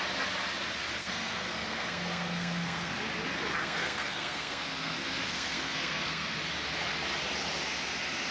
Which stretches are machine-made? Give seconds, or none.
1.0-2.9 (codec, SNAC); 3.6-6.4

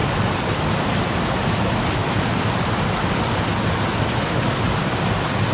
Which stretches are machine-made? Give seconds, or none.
none